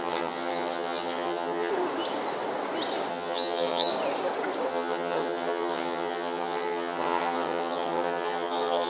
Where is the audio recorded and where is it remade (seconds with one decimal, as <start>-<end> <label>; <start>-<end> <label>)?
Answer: 0.0-1.7 remade; 1.7-3.1 recorded; 3.1-3.9 remade; 3.9-4.7 recorded; 4.7-8.9 remade